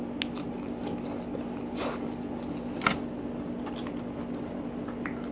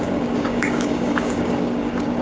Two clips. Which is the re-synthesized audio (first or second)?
second